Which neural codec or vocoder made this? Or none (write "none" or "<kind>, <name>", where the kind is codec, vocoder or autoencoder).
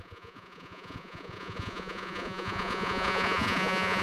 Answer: vocoder, Vocos